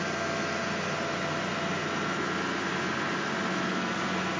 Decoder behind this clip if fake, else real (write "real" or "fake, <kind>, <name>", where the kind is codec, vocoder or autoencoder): real